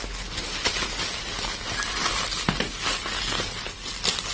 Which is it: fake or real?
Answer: real